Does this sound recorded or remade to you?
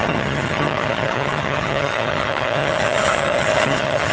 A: remade